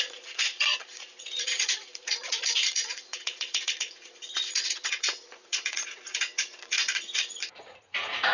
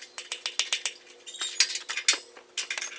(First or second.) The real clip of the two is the second